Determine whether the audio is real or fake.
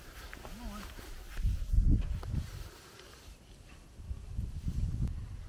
real